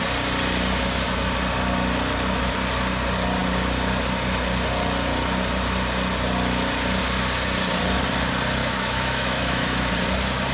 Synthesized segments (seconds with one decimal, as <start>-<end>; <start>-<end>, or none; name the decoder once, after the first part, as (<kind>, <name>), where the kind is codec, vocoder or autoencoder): 8.6-9.9 (autoencoder, DAC-VAE)